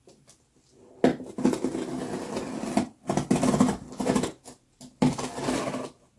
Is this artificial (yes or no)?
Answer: no